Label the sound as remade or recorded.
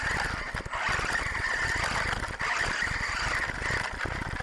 recorded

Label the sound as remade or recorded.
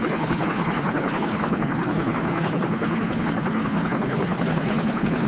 remade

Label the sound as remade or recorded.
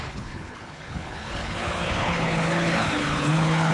remade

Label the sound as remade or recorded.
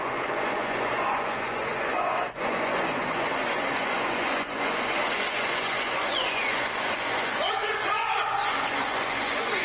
remade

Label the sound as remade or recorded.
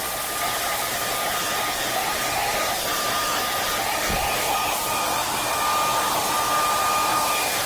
recorded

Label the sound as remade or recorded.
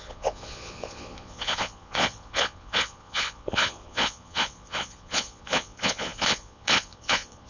remade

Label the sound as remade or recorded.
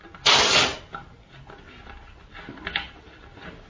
recorded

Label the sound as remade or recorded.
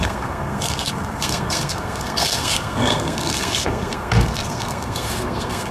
remade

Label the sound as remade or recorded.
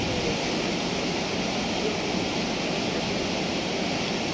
recorded